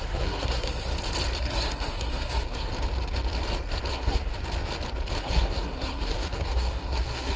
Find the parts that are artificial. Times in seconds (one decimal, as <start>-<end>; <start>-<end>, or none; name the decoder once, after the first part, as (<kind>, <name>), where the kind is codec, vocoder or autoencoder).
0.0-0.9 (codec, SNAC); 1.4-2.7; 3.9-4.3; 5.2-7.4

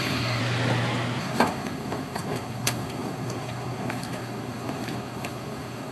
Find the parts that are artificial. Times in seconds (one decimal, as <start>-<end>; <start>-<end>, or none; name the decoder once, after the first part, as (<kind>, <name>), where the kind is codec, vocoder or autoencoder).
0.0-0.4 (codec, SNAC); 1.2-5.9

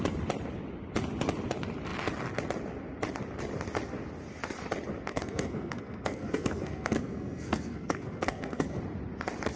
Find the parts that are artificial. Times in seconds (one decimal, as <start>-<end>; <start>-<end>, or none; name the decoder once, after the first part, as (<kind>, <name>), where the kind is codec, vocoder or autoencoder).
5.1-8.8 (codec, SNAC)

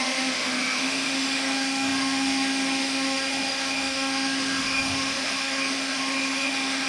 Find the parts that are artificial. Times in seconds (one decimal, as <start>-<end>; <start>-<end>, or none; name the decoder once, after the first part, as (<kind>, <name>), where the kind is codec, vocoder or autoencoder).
0.0-6.9 (autoencoder, DAC-VAE)